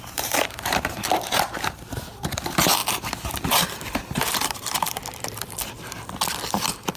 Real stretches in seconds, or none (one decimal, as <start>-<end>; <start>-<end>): 2.8-3.5; 5.0-6.5